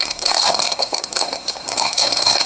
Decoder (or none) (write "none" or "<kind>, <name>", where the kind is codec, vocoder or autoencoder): codec, SNAC